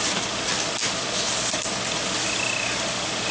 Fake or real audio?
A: real